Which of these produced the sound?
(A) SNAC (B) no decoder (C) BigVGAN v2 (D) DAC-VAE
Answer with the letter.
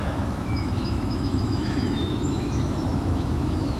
D